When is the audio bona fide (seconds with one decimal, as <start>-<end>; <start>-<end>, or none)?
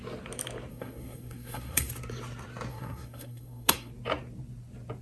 0.0-0.7; 1.9-2.7; 3.9-5.0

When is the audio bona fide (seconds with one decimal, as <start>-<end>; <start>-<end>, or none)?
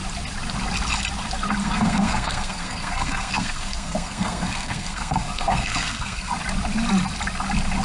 0.0-1.6; 6.3-7.8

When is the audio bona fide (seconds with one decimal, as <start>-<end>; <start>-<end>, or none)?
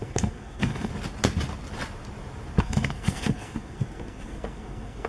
0.9-2.6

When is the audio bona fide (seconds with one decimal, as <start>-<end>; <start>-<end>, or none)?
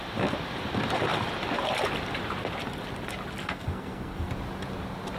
0.0-3.4; 4.3-5.2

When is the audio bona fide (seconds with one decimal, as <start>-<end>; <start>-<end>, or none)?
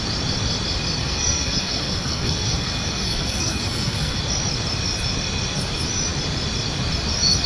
0.0-1.0; 4.2-7.5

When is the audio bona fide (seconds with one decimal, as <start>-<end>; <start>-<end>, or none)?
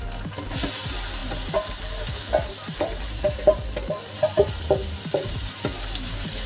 0.0-6.5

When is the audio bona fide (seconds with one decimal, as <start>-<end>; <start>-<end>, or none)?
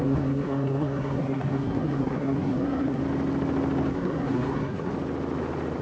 3.0-3.9; 4.9-5.8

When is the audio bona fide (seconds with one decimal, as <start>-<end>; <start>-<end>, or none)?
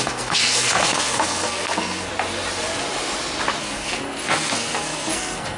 2.1-3.6